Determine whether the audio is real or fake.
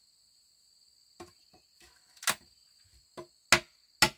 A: real